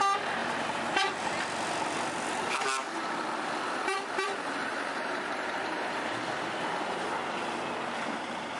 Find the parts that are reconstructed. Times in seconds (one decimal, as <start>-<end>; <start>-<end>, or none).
0.4-1.3; 4.6-6.4